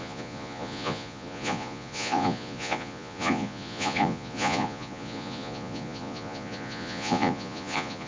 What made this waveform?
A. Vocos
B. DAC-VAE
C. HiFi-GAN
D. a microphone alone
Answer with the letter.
A